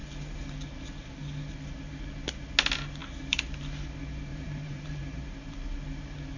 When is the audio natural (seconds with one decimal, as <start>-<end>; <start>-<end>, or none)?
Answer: 0.0-4.3; 5.2-6.4